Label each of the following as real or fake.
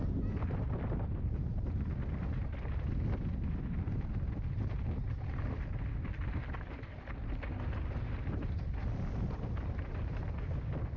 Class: real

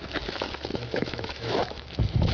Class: fake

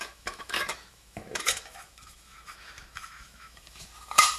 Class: fake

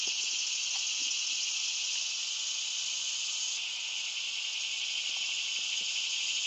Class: real